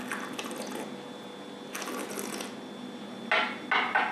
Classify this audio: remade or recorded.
recorded